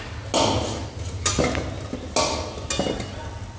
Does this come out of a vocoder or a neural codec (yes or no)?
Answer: no